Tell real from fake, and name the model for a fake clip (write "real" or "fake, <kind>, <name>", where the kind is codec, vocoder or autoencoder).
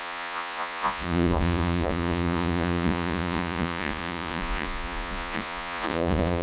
fake, vocoder, Vocos